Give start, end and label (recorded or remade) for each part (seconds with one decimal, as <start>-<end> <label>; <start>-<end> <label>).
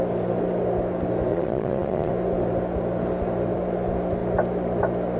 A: 0.0-1.3 recorded; 1.3-2.1 remade; 2.1-5.2 recorded